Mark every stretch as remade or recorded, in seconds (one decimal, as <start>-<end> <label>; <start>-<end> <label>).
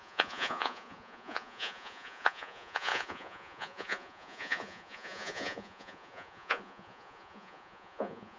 0.0-8.4 remade